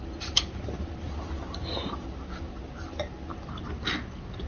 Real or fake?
real